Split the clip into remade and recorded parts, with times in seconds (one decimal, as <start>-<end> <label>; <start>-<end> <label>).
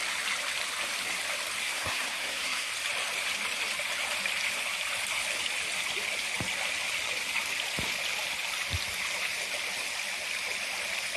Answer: 0.0-1.6 recorded; 1.6-2.7 remade; 2.7-11.2 recorded